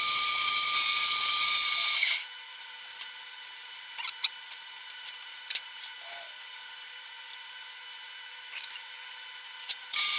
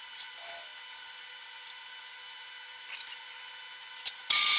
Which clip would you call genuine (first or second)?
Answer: second